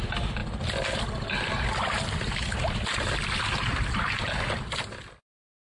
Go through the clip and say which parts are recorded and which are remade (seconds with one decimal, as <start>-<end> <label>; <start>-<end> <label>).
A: 0.0-5.7 recorded